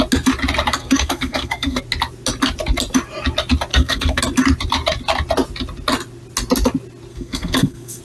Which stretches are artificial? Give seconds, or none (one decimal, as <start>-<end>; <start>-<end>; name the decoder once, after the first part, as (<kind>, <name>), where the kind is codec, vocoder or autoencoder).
0.8-1.8 (codec, SNAC); 3.7-4.2; 7.1-8.0